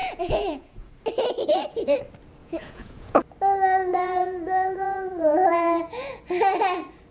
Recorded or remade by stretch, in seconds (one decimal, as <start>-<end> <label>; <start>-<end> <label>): 0.0-0.9 remade; 0.9-2.4 recorded; 2.4-3.2 remade; 3.2-3.9 recorded; 3.9-6.2 remade; 6.2-7.1 recorded